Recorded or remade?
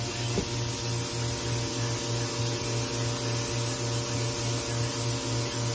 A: recorded